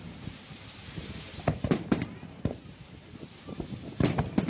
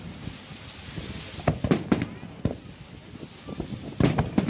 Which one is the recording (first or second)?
second